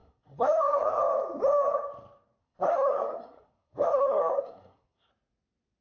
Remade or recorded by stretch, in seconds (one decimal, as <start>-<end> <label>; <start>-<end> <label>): 0.0-1.0 remade; 1.0-2.4 recorded; 2.4-5.1 remade; 5.1-5.8 recorded